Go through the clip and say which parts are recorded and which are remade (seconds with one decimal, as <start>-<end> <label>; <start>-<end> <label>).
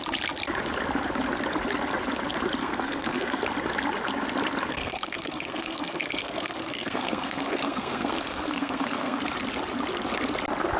0.0-2.6 recorded; 2.6-3.4 remade; 3.4-4.7 recorded; 4.7-9.2 remade; 9.2-10.8 recorded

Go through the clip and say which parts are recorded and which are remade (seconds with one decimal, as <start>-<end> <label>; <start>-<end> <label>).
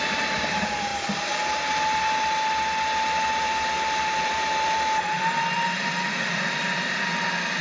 0.0-0.9 remade; 0.9-3.4 recorded; 3.4-7.6 remade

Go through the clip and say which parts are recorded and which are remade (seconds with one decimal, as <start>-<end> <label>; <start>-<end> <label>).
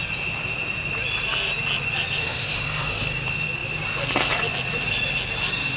0.0-2.2 recorded; 2.2-3.2 remade; 3.2-5.8 recorded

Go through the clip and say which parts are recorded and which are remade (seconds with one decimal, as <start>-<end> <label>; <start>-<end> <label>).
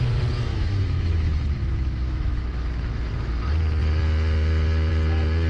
0.0-0.5 recorded; 0.5-3.1 remade; 3.1-5.5 recorded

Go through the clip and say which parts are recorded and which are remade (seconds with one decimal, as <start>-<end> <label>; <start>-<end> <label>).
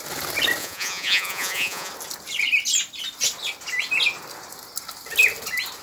0.0-0.6 recorded; 0.6-1.9 remade; 1.9-5.8 recorded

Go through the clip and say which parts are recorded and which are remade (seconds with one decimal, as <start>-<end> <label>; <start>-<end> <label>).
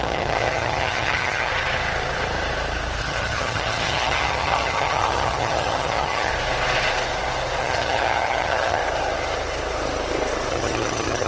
0.0-1.5 remade; 1.5-3.0 recorded; 3.0-6.3 remade; 6.3-7.6 recorded; 7.6-8.8 remade; 8.8-10.5 recorded; 10.5-11.3 remade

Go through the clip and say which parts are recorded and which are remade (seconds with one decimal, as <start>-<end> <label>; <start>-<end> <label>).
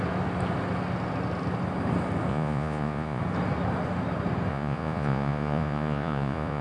0.0-2.3 recorded; 2.3-3.2 remade; 3.2-4.5 recorded; 4.5-6.6 remade